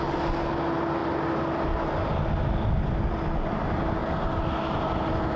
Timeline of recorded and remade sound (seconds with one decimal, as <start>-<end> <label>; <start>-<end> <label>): 0.0-5.4 recorded